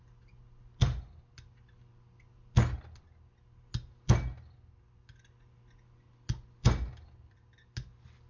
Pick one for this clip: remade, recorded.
recorded